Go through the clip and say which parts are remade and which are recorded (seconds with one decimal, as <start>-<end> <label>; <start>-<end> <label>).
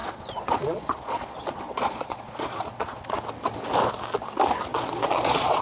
0.0-3.2 remade; 3.2-4.7 recorded; 4.7-5.6 remade